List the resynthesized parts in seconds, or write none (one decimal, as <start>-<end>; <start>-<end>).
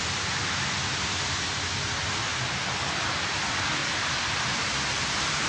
3.8-5.5